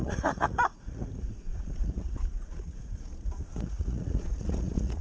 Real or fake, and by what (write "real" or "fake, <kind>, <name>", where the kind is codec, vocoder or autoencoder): fake, vocoder, Vocos